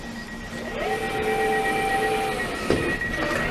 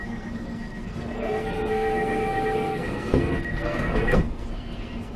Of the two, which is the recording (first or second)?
first